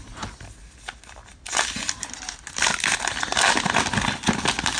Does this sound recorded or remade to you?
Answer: recorded